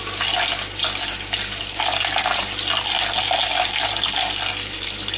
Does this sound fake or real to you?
real